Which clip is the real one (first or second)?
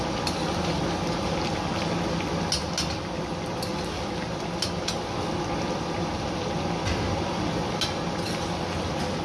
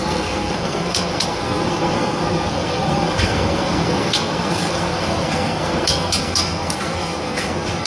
first